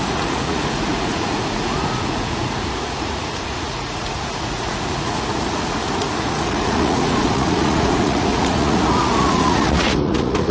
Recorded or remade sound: remade